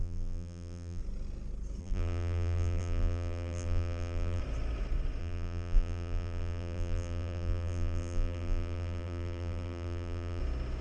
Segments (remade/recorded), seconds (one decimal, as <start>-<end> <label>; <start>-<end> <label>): 0.0-1.0 remade; 1.0-1.8 recorded; 1.8-4.4 remade; 4.4-5.2 recorded; 5.2-10.4 remade; 10.4-10.8 recorded